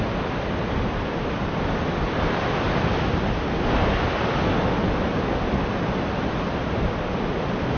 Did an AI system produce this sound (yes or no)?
no